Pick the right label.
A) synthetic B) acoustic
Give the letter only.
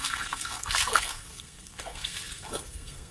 A